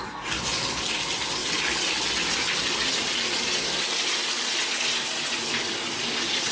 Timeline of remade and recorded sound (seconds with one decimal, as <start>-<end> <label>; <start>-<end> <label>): 0.0-6.5 recorded